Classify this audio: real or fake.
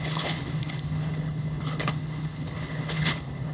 fake